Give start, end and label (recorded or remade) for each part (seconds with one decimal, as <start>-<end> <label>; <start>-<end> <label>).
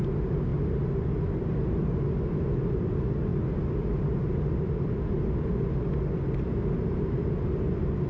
0.0-8.1 recorded